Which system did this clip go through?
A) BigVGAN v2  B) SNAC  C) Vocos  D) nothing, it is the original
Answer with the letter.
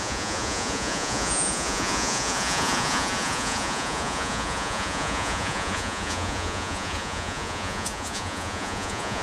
C